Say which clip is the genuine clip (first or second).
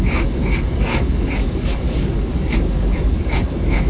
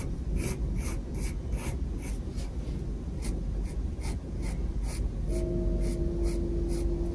second